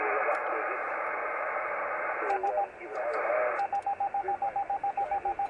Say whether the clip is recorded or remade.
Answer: recorded